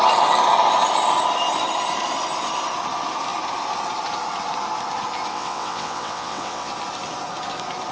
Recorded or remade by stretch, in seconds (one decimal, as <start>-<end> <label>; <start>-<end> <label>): 0.0-5.3 recorded; 5.3-6.7 remade; 6.7-7.9 recorded